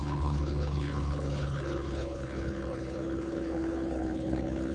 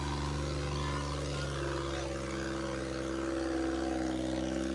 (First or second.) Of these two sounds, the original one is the second